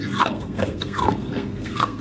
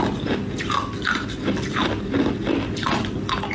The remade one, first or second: first